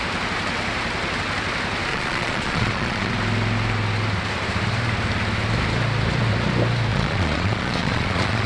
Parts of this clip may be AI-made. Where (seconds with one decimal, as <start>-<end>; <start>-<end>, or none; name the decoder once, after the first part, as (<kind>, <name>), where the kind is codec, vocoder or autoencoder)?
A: 1.9-3.1 (vocoder, Vocos); 6.9-8.5